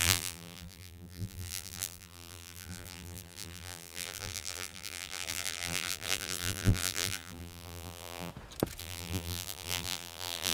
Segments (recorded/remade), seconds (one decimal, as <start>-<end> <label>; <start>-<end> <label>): 0.0-8.3 remade; 8.3-8.8 recorded; 8.8-10.5 remade